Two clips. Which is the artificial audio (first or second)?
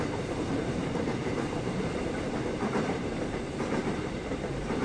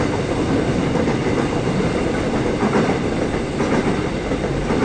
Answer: first